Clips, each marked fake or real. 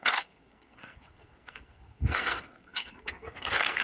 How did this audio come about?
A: fake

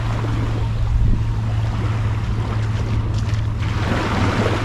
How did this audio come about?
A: real